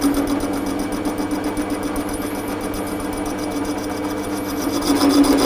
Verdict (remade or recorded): recorded